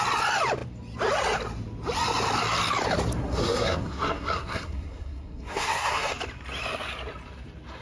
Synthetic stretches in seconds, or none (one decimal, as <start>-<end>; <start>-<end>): 3.2-6.1